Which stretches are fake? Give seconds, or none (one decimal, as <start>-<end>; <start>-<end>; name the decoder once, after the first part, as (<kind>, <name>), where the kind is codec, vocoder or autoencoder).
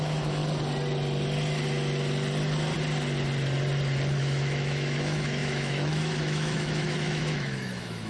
0.0-0.4 (autoencoder, DAC-VAE); 4.2-8.1